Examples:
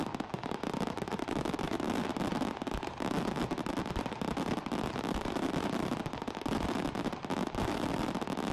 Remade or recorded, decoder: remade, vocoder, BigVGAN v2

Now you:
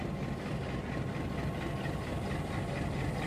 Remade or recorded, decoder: recorded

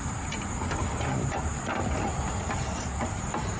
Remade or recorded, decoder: recorded